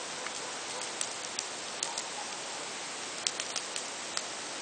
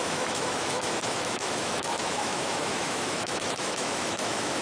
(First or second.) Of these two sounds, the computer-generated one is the second